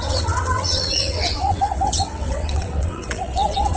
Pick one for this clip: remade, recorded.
remade